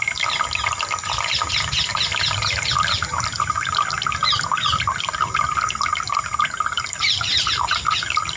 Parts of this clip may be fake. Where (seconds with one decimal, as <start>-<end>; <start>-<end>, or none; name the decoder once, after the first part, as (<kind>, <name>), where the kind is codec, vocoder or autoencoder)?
none